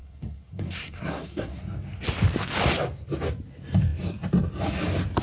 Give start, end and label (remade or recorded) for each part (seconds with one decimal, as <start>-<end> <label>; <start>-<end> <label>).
0.0-1.6 remade; 1.6-5.2 recorded